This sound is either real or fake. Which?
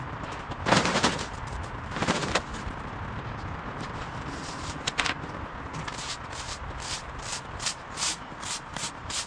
fake